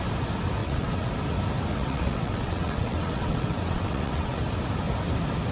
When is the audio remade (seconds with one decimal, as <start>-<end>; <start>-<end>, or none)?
0.6-1.1; 1.7-4.4